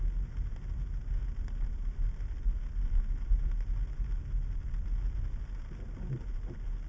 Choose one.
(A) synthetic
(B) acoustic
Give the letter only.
B